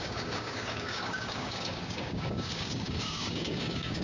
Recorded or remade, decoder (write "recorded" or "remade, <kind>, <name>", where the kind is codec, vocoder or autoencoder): remade, codec, DAC